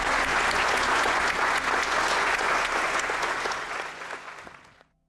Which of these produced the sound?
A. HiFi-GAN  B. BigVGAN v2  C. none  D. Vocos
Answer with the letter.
D